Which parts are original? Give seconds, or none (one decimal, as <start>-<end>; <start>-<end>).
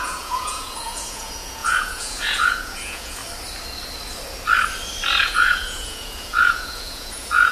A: 3.2-5.2